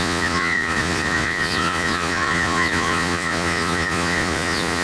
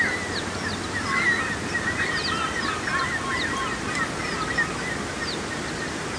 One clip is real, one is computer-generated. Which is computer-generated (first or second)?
first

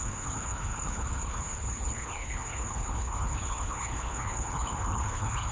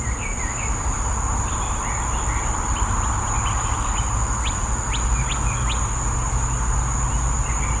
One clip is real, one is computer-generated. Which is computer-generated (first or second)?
first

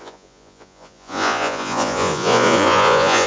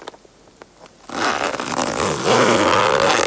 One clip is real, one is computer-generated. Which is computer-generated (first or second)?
first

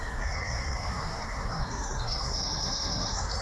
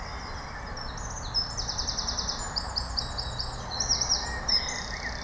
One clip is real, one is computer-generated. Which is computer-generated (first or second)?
first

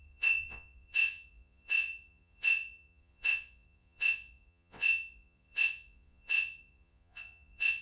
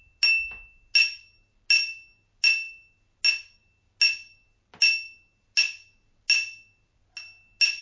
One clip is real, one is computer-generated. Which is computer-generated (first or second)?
first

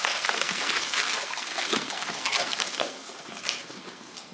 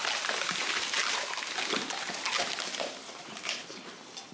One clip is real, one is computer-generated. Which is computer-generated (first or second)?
first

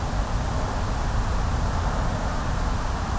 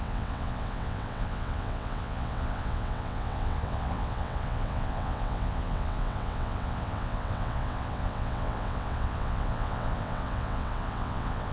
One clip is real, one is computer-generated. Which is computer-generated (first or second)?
second